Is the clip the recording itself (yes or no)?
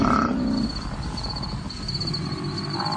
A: yes